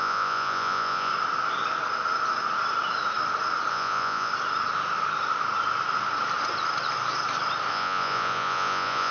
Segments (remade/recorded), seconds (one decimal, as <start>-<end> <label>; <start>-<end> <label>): 0.0-1.1 remade; 1.1-3.7 recorded; 3.7-4.3 remade; 4.3-7.7 recorded; 7.7-9.1 remade